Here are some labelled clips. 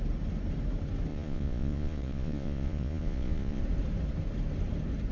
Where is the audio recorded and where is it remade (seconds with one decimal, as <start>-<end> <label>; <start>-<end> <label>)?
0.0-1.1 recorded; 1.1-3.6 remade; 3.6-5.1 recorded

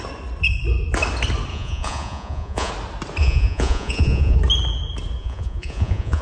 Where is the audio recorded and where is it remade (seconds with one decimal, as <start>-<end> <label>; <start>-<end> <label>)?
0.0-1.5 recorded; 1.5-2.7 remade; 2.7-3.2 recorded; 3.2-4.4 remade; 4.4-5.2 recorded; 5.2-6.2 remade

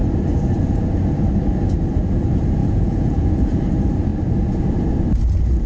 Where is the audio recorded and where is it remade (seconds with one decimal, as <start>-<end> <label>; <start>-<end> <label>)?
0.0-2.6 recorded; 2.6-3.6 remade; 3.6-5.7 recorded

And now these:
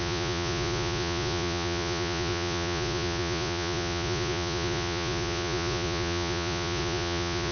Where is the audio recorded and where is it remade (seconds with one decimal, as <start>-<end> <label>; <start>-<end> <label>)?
0.0-7.5 remade

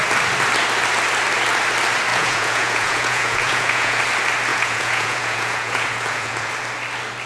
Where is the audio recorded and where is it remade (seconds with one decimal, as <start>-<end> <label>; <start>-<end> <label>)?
0.0-2.1 recorded; 2.1-4.0 remade; 4.0-4.5 recorded; 4.5-6.5 remade; 6.5-7.3 recorded

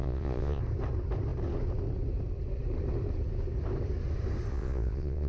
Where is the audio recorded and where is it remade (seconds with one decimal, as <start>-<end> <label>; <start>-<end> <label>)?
0.0-0.6 remade; 0.6-4.5 recorded; 4.5-5.3 remade

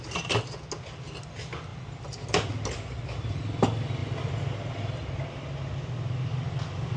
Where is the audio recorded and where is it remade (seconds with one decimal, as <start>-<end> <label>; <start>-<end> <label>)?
0.0-7.0 recorded

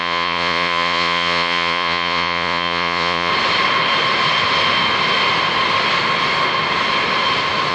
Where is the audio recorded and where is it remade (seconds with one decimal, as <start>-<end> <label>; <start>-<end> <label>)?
0.0-3.3 remade; 3.3-7.7 recorded